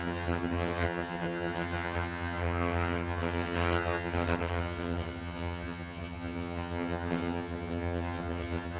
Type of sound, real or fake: fake